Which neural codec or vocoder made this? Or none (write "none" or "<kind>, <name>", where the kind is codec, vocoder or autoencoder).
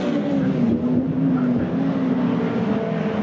none